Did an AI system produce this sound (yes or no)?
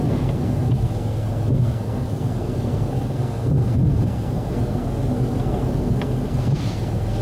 yes